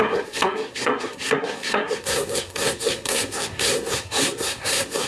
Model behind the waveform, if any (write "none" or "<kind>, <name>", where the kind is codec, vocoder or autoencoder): codec, SNAC